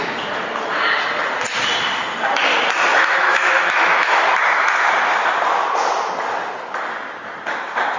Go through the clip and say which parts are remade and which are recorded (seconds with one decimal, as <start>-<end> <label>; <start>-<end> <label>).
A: 0.0-2.9 recorded; 2.9-4.9 remade; 4.9-8.0 recorded

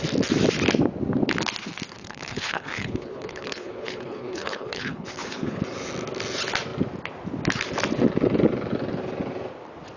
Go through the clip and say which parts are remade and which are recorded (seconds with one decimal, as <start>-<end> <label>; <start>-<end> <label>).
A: 0.0-1.9 recorded; 1.9-5.6 remade; 5.6-10.0 recorded

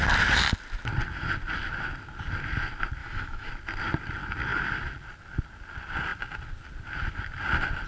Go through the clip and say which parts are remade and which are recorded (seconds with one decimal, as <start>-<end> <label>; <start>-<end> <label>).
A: 0.0-3.0 recorded; 3.0-3.5 remade; 3.5-7.9 recorded

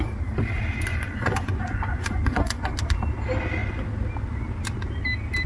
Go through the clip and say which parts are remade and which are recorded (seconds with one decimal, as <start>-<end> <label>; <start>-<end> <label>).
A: 0.0-0.9 recorded; 0.9-2.7 remade; 2.7-5.5 recorded

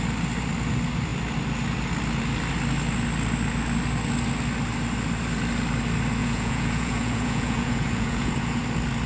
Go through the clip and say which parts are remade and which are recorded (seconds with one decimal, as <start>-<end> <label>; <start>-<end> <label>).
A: 0.0-6.2 recorded; 6.2-8.6 remade; 8.6-9.1 recorded

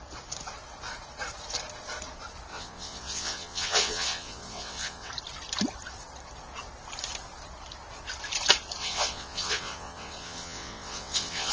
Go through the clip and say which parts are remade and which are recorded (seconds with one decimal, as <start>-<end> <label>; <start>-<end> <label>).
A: 0.0-2.5 recorded; 2.5-5.1 remade; 5.1-8.8 recorded; 8.8-11.5 remade

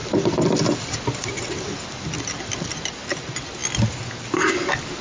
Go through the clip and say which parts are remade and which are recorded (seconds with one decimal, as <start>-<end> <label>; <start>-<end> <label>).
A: 0.0-5.0 recorded

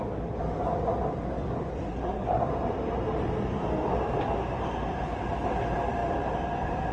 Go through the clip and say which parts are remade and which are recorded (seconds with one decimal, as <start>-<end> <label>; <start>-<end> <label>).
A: 0.0-1.9 recorded; 1.9-2.5 remade; 2.5-6.9 recorded